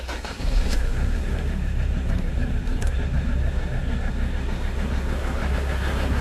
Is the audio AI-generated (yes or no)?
yes